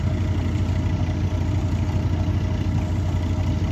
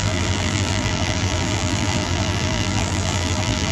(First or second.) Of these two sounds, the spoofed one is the second